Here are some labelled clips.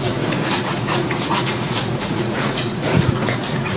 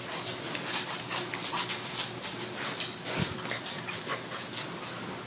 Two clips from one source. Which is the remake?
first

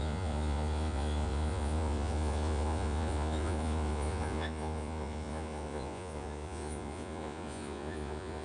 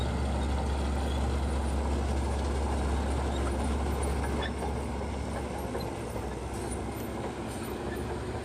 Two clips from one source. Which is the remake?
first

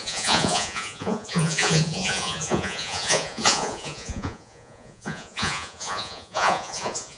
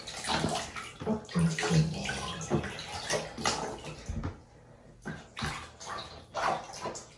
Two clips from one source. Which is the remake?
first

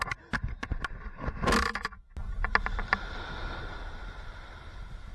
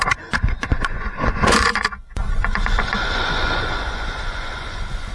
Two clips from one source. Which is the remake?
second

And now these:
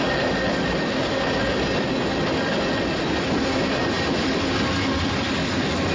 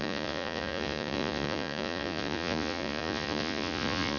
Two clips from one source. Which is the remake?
second